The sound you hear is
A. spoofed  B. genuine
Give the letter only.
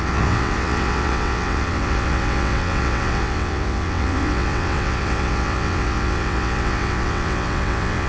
A